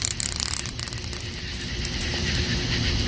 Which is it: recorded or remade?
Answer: remade